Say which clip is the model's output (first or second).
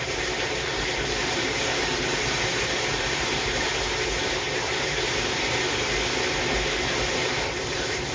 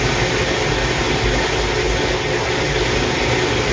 first